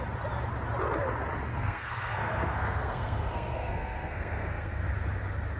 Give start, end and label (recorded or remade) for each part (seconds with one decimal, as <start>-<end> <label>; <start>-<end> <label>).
0.0-1.5 recorded; 1.5-4.9 remade; 4.9-5.6 recorded